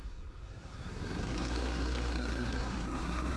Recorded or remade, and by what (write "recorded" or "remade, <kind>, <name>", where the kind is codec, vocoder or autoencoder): remade, codec, SNAC